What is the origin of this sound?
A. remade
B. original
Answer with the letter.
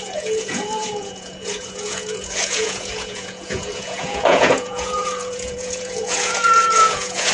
A